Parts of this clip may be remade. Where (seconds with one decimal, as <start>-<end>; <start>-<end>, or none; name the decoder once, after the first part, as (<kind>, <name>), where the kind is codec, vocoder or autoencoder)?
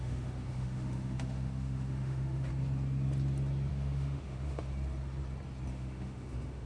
0.0-2.5 (autoencoder, DAC-VAE); 3.7-4.7; 5.7-6.7